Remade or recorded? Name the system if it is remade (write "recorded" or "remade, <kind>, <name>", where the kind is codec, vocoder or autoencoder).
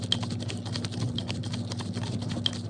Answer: recorded